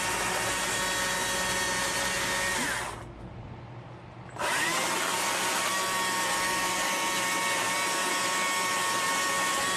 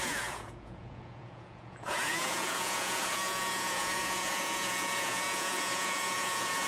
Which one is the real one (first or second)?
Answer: first